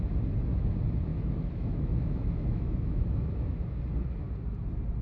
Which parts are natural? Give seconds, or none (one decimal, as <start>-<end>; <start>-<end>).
0.0-1.1; 3.8-5.0